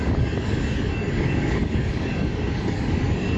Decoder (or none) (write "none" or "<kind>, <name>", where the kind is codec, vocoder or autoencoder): codec, DAC